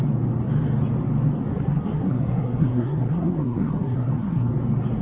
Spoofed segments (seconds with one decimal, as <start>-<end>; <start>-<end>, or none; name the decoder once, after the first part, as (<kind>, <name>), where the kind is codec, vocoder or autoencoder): 1.5-4.5 (codec, SNAC)

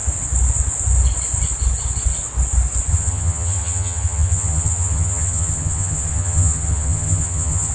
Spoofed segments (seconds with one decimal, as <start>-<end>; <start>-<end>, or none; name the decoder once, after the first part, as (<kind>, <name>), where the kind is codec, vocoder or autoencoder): 2.9-7.7 (vocoder, HiFi-GAN)

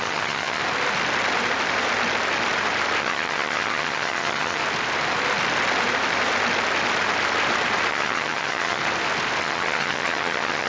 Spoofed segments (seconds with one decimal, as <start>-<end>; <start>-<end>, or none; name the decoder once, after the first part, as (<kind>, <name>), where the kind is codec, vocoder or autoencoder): 0.0-0.6 (vocoder, HiFi-GAN); 3.0-4.6; 7.9-8.8; 9.4-10.7

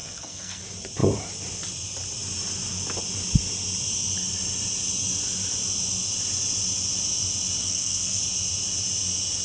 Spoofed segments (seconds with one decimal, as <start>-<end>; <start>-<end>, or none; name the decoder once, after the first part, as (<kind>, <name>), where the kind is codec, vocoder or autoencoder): 0.0-0.6 (codec, SNAC); 7.6-8.2